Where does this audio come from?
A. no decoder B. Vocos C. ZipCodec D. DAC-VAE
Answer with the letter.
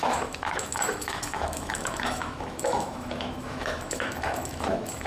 D